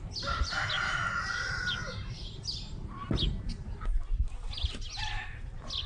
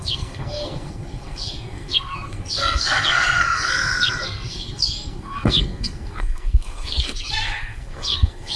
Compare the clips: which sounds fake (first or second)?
second